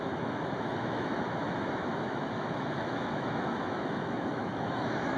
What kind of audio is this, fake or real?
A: fake